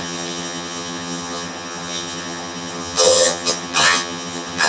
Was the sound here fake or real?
fake